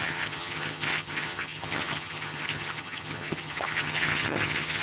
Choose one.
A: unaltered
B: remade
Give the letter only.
B